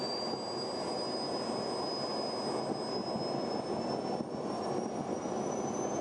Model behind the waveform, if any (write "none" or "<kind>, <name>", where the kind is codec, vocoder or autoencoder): none